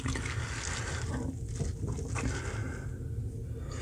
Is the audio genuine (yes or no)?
yes